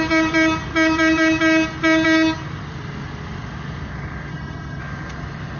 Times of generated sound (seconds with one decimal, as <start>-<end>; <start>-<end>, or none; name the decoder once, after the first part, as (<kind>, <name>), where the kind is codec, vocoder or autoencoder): 4.3-4.8 (codec, HILCodec)